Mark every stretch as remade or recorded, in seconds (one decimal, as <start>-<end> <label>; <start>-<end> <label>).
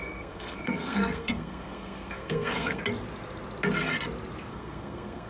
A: 0.0-2.8 remade; 2.8-4.5 recorded; 4.5-5.3 remade